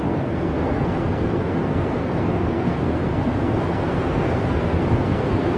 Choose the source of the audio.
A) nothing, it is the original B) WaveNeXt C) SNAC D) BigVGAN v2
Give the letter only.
C